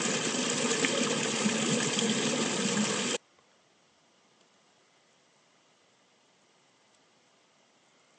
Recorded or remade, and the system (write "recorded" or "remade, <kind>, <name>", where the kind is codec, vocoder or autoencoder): recorded